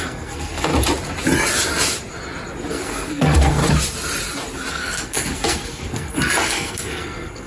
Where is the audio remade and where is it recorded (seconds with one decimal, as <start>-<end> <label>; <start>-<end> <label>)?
0.0-0.7 remade; 0.7-2.7 recorded; 2.7-3.6 remade; 3.6-4.7 recorded; 4.7-7.5 remade

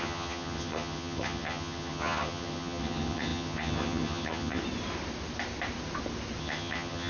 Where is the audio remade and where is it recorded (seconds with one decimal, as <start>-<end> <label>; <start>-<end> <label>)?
0.0-4.6 remade; 4.6-6.4 recorded; 6.4-7.1 remade